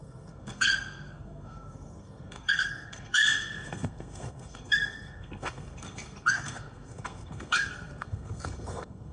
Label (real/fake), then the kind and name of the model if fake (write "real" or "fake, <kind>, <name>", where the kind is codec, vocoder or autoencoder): fake, codec, SNAC